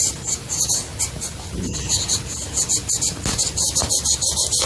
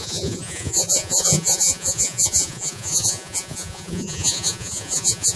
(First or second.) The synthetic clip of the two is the second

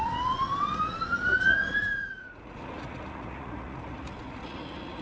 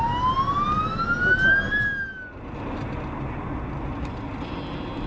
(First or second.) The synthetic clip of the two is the first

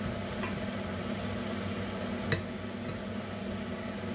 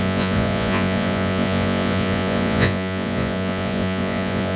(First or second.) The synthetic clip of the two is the second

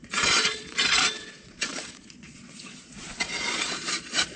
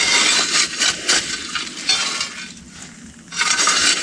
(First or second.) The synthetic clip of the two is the first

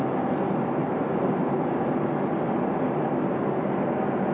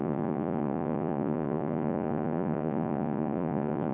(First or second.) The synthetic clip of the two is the second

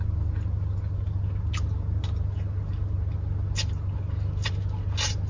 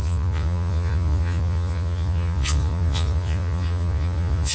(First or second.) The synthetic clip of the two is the second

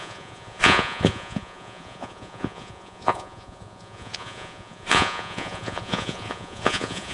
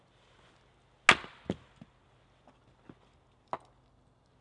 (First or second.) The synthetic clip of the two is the first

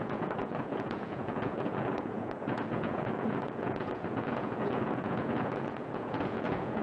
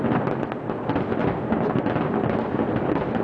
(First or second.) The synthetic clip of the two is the first